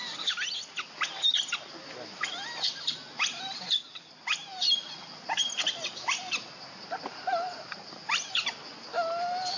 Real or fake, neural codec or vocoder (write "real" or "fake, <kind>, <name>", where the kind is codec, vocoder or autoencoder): real